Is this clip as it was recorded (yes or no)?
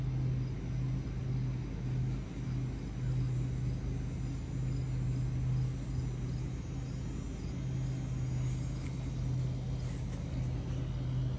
yes